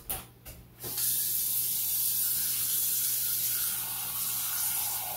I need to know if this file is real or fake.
real